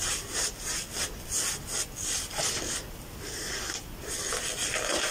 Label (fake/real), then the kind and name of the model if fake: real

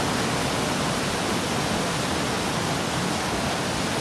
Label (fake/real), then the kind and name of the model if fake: real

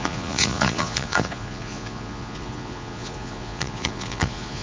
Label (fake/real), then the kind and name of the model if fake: fake, vocoder, Vocos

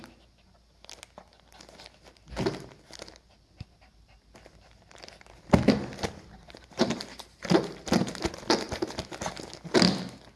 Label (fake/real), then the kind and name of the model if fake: real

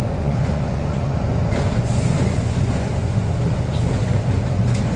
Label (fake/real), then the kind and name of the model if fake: fake, vocoder, Vocos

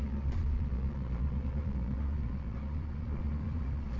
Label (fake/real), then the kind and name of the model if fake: fake, vocoder, Vocos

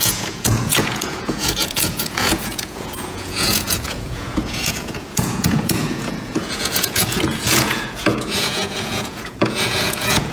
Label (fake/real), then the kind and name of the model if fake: fake, vocoder, Vocos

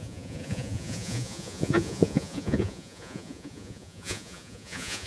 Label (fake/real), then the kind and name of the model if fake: fake, vocoder, Vocos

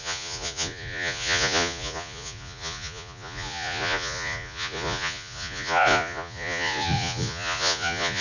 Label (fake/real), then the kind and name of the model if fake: fake, vocoder, Vocos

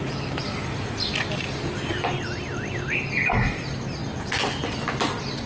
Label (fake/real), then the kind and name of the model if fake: real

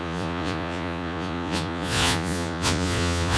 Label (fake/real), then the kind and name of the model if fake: fake, vocoder, Vocos